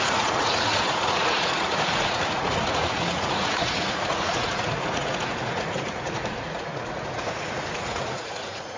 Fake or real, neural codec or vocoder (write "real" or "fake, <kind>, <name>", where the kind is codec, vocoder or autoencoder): fake, vocoder, Vocos